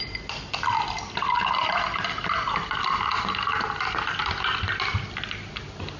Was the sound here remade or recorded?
recorded